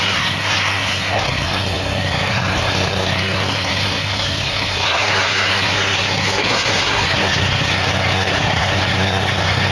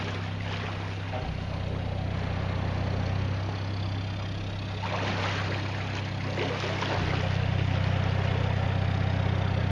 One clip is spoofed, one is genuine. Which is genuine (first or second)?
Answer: second